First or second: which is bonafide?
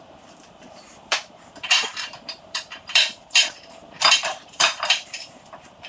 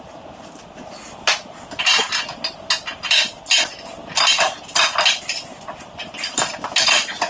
second